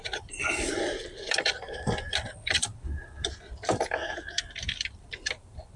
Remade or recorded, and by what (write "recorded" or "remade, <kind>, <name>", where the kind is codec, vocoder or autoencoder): remade, vocoder, BigVGAN v2